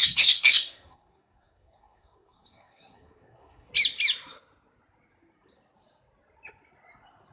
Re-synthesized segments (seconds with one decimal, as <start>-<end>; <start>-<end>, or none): 0.0-3.7